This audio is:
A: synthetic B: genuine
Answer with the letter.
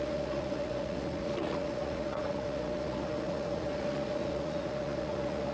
A